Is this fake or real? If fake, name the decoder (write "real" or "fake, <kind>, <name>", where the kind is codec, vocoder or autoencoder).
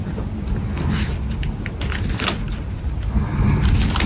real